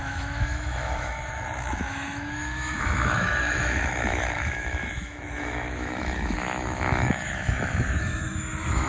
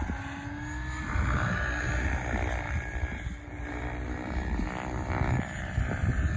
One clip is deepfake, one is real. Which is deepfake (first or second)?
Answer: first